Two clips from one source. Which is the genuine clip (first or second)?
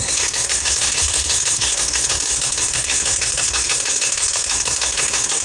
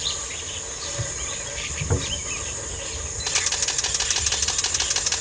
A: second